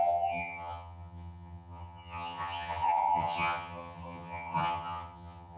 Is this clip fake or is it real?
fake